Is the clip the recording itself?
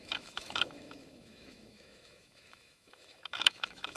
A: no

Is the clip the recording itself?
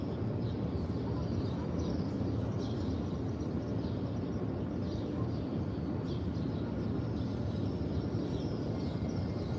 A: yes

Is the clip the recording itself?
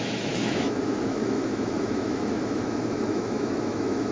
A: no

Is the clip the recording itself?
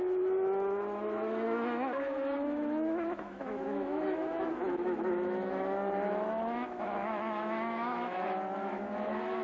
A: no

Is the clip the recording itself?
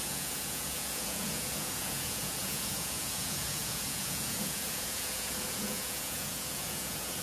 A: no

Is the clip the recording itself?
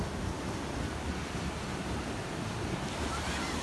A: yes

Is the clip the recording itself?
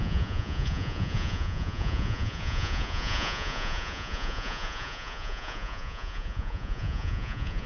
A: no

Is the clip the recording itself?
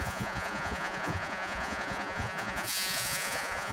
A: no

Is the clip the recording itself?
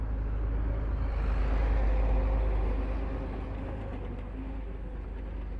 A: yes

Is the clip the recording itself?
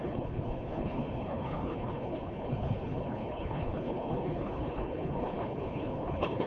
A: no